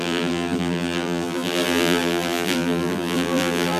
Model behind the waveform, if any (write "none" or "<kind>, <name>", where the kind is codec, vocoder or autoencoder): vocoder, BigVGAN v2